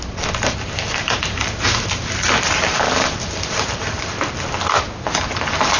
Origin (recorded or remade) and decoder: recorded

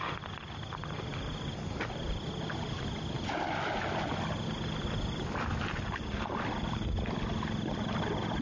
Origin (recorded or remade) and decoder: recorded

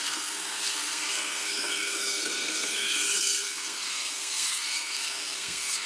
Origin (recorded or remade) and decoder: remade, codec, SNAC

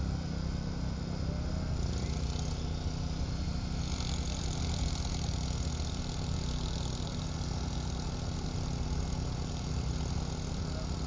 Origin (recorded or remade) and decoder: recorded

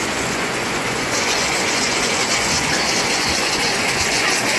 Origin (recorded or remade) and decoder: remade, vocoder, Vocos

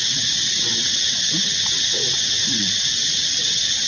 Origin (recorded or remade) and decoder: remade, vocoder, WaveNeXt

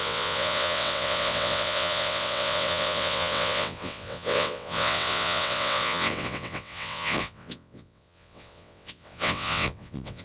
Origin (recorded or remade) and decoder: remade, vocoder, WaveNeXt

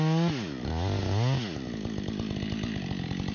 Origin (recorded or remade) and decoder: recorded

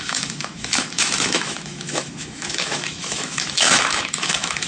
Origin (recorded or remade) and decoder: remade, autoencoder, DAC-VAE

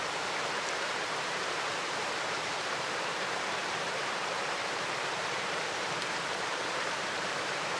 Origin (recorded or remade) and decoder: remade, vocoder, BigVGAN v2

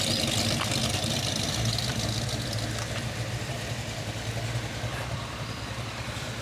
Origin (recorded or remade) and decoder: remade, vocoder, BigVGAN v2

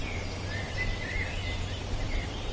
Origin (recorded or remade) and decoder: recorded